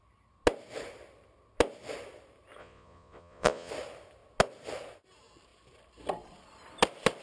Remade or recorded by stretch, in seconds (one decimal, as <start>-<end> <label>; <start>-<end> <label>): 0.0-2.6 recorded; 2.6-3.7 remade; 3.7-7.2 recorded